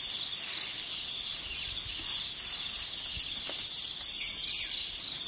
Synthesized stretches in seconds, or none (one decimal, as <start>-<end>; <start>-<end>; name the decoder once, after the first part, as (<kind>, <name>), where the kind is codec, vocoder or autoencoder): none